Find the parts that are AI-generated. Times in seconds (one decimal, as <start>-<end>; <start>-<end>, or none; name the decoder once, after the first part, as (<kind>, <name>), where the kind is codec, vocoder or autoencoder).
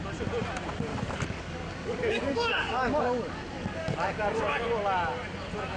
0.9-4.4 (codec, DAC)